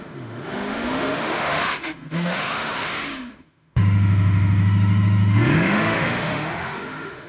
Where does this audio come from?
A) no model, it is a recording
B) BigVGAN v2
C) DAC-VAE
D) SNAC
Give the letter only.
C